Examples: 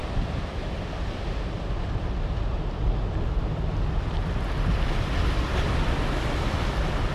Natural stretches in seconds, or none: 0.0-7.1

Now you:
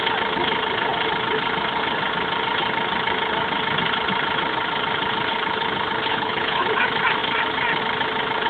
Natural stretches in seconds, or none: 0.0-6.1; 6.6-8.5

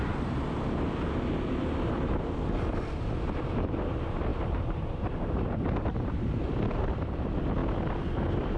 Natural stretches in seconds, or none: 0.0-4.3; 6.5-8.6

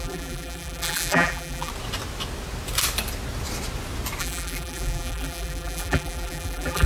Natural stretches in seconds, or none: 1.7-4.2

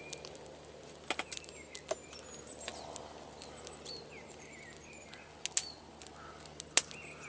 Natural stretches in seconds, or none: 0.0-7.3

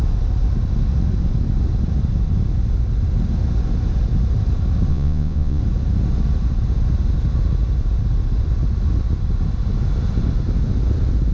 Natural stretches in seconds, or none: 0.0-4.9; 5.6-11.3

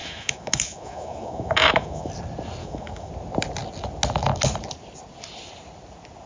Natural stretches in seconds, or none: 2.1-2.6; 3.1-6.3